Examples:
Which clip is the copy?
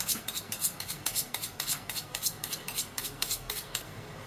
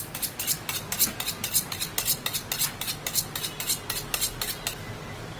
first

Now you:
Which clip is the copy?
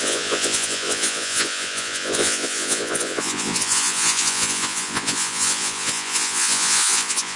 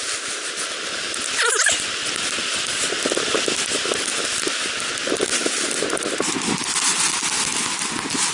first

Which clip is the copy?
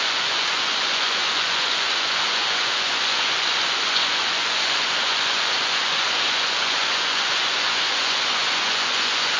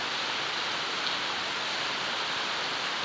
first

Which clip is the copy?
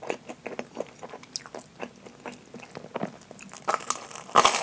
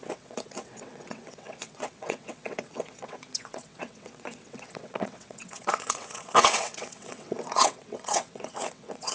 second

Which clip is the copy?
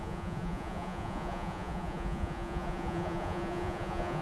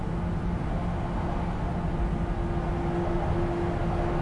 first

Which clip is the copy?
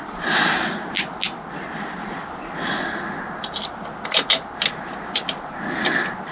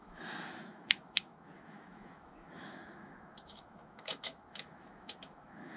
second